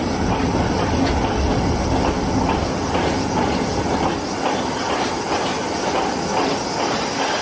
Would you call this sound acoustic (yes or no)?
yes